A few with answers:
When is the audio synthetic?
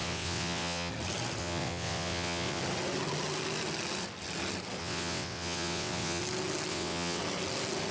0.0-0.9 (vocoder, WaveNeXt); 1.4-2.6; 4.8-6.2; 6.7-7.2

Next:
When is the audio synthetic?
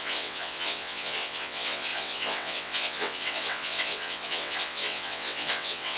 0.0-6.0 (vocoder, WaveNeXt)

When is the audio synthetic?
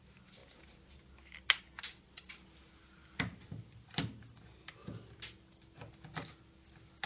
none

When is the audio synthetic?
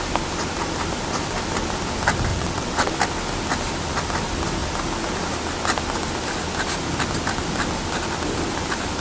2.3-2.9 (vocoder, WaveNeXt)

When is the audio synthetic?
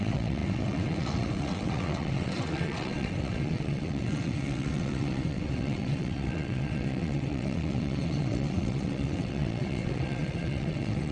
0.0-11.1 (vocoder, WaveNeXt)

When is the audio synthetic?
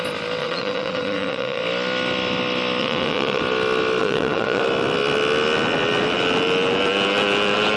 0.4-1.6 (vocoder, WaveNeXt); 2.8-3.4; 4.0-4.6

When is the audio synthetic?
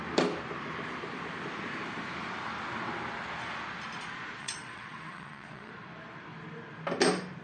4.4-5.7 (vocoder, WaveNeXt)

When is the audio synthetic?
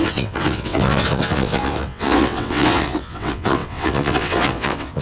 0.0-5.0 (vocoder, WaveNeXt)